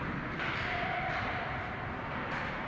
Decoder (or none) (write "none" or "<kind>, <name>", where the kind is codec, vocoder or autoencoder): none